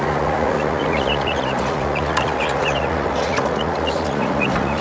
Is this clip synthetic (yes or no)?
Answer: yes